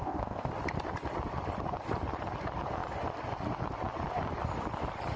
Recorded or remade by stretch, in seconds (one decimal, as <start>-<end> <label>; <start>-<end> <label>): 0.0-0.5 remade; 0.5-5.2 recorded